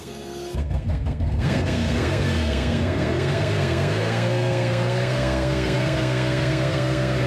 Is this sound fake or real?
fake